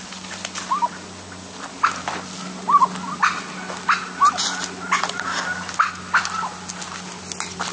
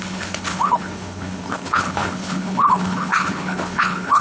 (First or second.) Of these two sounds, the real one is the first